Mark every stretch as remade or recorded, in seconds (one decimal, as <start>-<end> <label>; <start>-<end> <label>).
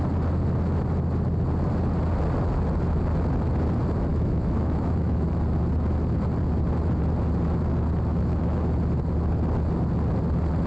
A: 0.0-4.1 recorded; 4.1-5.3 remade; 5.3-8.1 recorded; 8.1-8.6 remade; 8.6-10.7 recorded